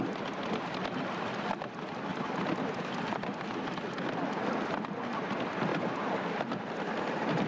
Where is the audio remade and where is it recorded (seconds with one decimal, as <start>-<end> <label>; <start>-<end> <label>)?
0.0-7.5 recorded